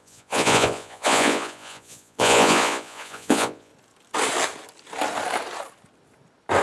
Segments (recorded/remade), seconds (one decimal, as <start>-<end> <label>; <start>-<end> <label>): 0.0-3.7 remade; 3.7-6.6 recorded